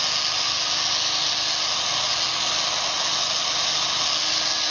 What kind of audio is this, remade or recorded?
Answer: recorded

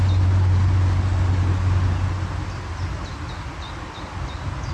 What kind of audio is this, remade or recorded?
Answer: recorded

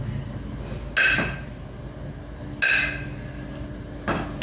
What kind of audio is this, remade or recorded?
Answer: recorded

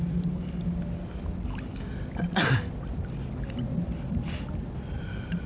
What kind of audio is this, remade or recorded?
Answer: recorded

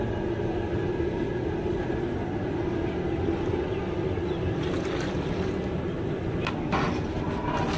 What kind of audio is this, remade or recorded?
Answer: recorded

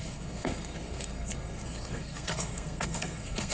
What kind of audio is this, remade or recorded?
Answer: remade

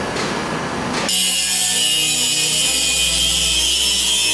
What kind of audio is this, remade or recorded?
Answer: recorded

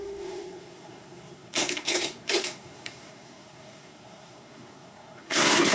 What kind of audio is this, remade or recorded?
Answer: remade